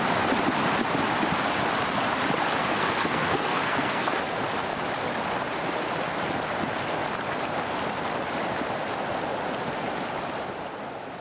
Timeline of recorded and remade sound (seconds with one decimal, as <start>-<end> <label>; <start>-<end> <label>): 0.0-2.6 recorded; 2.6-4.1 remade; 4.1-11.2 recorded